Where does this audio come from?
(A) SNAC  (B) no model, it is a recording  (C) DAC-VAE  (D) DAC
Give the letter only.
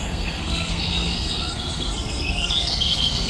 A